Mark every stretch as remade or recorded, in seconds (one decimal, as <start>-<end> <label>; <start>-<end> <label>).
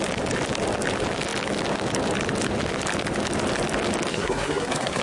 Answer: 0.0-4.1 recorded; 4.1-5.0 remade